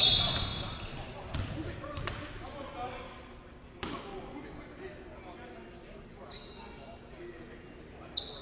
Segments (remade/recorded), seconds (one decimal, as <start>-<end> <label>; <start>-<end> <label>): 0.0-8.4 recorded